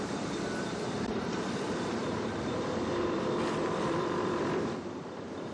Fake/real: fake